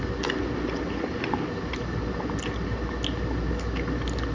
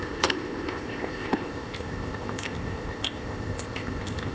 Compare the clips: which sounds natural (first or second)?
first